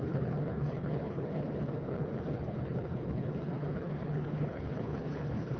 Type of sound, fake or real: fake